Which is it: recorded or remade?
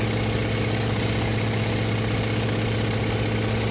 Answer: recorded